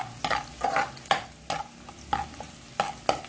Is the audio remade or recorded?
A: recorded